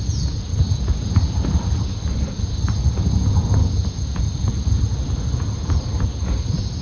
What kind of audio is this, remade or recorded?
recorded